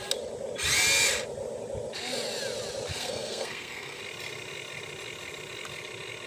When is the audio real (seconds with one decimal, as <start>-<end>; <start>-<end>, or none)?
0.0-2.9; 4.0-6.3